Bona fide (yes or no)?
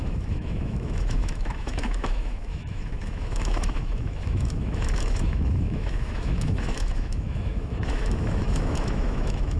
no